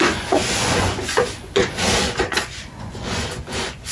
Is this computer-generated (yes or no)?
yes